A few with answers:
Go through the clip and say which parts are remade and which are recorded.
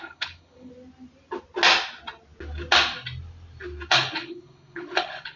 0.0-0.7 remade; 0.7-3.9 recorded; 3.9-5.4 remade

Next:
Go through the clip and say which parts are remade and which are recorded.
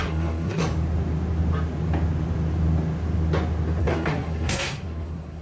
0.0-0.6 remade; 0.6-3.8 recorded; 3.8-5.4 remade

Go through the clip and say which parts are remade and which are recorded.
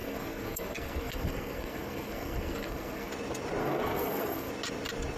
0.0-3.1 remade; 3.1-3.6 recorded; 3.6-4.5 remade; 4.5-5.2 recorded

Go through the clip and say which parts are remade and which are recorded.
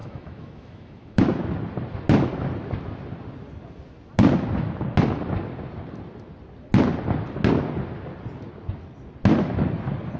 0.0-1.2 remade; 1.2-10.2 recorded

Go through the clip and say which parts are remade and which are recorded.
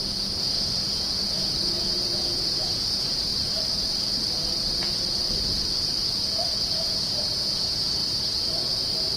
0.0-3.3 remade; 3.3-6.6 recorded; 6.6-8.0 remade; 8.0-9.2 recorded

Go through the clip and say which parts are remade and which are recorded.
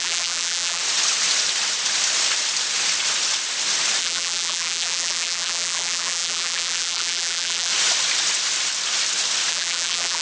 0.0-0.8 remade; 0.8-4.0 recorded; 4.0-7.7 remade; 7.7-9.5 recorded; 9.5-10.2 remade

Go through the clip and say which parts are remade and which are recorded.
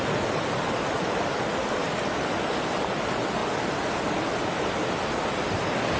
0.0-1.8 recorded; 1.8-2.3 remade; 2.3-3.4 recorded; 3.4-5.1 remade; 5.1-6.0 recorded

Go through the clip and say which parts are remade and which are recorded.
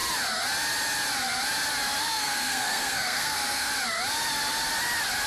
0.0-2.0 recorded; 2.0-3.7 remade; 3.7-5.3 recorded